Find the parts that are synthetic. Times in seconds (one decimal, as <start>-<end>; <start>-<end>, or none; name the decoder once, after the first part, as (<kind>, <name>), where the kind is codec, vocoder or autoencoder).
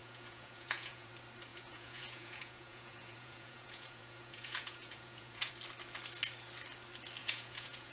0.0-1.1 (vocoder, Vocos); 1.5-5.5; 7.2-7.9